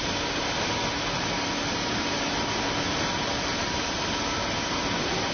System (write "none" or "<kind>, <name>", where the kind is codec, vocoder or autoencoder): none